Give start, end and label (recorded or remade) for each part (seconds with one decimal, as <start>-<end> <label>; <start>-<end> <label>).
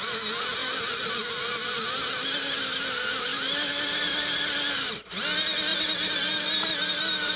0.0-5.7 recorded; 5.7-6.7 remade; 6.7-7.4 recorded